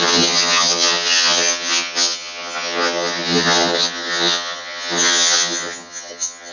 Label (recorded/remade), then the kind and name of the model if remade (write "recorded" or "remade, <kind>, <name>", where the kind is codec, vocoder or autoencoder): remade, vocoder, HiFi-GAN